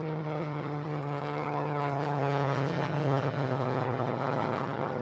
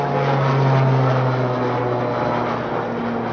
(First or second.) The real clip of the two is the second